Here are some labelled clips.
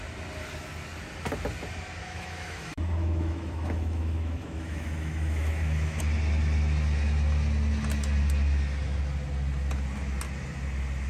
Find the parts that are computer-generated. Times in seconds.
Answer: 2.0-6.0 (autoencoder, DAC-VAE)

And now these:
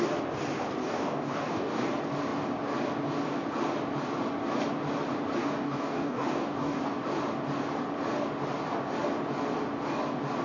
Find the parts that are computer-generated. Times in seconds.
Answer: 0.8-1.9 (codec, DAC); 5.4-6.8

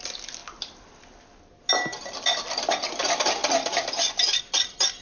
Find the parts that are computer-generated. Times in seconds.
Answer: none

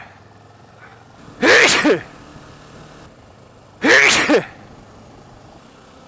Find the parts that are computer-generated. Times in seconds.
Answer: none

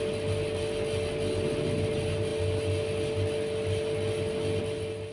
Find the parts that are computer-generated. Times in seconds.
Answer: none

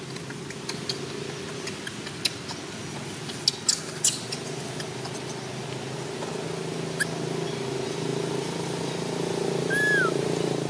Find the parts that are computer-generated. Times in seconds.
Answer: none